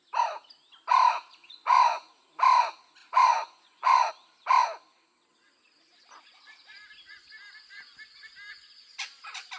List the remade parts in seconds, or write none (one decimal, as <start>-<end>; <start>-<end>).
1.4-2.1; 3.0-4.1